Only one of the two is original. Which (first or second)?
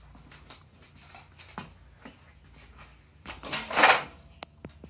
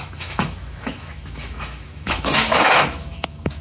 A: first